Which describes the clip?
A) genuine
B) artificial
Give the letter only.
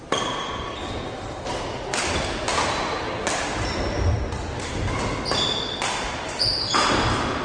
A